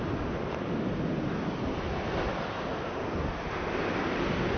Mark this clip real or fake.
real